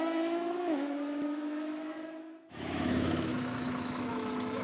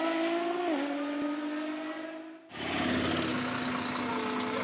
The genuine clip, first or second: second